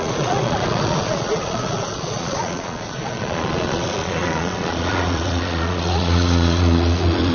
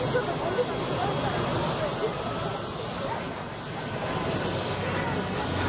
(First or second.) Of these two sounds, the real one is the second